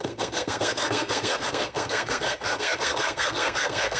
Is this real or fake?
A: fake